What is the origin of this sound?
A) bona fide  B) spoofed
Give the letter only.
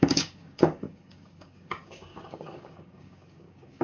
B